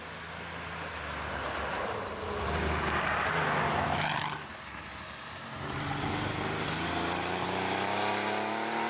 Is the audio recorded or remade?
recorded